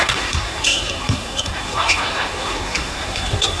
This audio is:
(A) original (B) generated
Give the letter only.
B